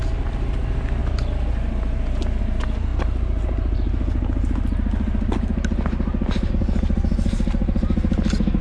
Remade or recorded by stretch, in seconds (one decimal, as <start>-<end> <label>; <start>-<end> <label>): 0.0-8.6 recorded